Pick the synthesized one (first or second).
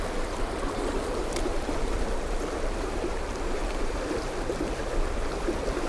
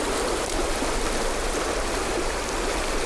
first